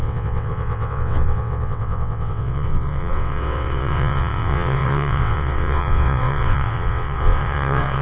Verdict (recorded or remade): remade